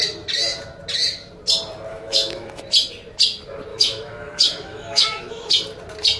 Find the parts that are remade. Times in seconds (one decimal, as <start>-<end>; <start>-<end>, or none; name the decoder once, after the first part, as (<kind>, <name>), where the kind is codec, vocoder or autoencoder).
1.9-2.6 (autoencoder, DAC-VAE); 3.7-5.5